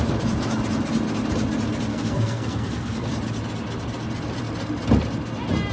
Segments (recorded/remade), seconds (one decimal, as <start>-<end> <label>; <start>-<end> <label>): 0.0-1.9 recorded; 1.9-3.1 remade; 3.1-5.7 recorded